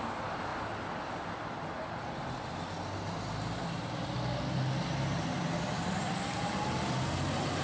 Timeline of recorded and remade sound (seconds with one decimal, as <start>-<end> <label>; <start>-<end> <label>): 0.0-7.6 recorded